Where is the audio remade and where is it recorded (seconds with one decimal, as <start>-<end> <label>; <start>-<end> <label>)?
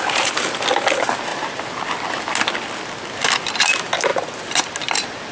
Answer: 0.0-5.3 recorded